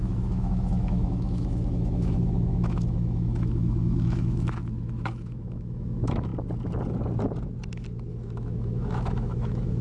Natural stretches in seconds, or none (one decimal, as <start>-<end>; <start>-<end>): 6.3-8.1